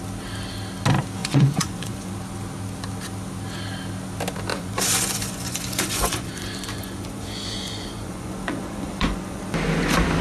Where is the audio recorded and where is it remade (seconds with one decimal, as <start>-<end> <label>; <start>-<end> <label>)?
0.0-1.2 recorded; 1.2-2.1 remade; 2.1-4.5 recorded; 4.5-9.4 remade; 9.4-10.2 recorded